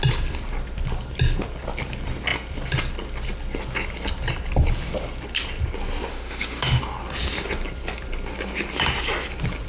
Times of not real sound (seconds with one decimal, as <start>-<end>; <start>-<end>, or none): 6.1-6.8